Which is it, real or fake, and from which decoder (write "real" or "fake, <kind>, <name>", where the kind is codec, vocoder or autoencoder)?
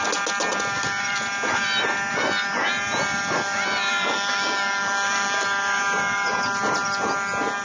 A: real